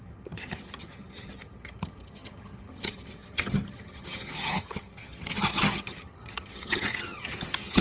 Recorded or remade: remade